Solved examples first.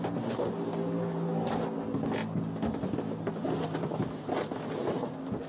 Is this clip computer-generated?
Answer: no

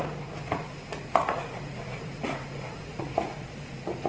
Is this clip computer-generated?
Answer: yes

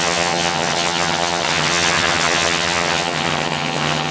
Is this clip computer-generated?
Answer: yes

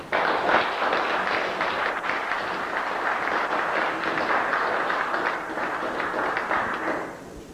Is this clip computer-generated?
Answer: no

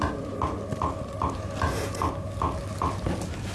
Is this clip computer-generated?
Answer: no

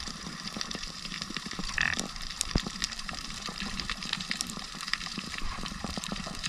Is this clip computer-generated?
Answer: yes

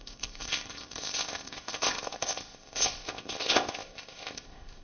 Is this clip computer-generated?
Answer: yes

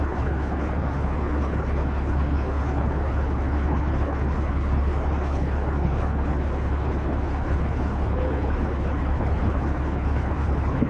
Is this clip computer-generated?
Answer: yes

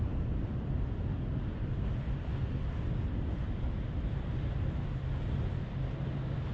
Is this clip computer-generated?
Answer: no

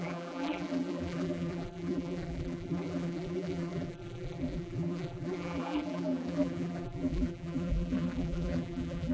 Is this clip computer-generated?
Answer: yes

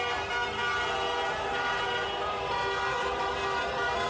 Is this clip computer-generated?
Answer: no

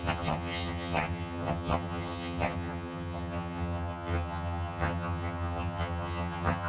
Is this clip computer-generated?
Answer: yes